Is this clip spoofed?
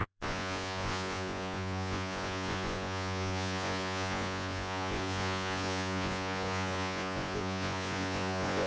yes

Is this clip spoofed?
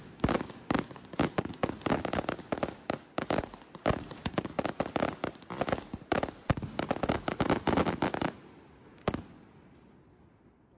no